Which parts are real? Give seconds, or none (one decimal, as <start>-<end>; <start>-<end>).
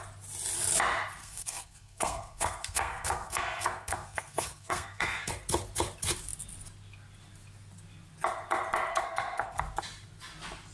0.0-1.2; 5.3-8.9; 9.6-10.7